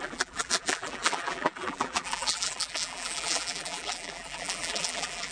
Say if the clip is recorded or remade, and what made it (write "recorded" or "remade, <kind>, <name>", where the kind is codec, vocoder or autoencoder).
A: remade, vocoder, BigVGAN v2